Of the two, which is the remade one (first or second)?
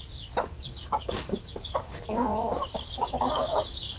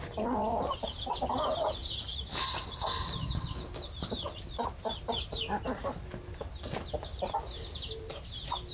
first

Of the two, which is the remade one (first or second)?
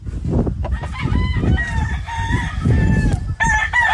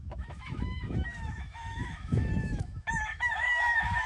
second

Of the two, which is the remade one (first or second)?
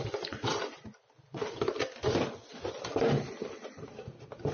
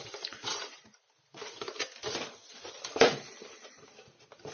second